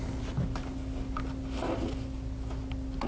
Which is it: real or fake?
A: real